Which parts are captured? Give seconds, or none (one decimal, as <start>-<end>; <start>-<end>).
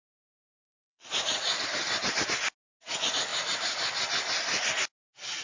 0.0-0.6; 1.6-5.4